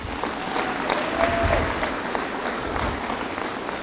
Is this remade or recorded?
recorded